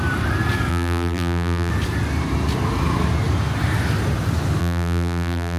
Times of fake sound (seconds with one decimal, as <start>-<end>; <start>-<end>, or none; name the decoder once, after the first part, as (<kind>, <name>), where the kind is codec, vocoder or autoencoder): 0.7-1.7 (vocoder, BigVGAN v2); 4.6-5.6